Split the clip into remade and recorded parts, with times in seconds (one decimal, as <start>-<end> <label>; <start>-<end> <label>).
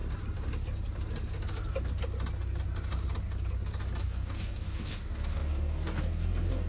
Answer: 0.0-4.0 recorded; 4.0-6.7 remade